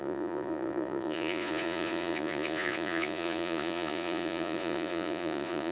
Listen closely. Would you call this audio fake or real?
fake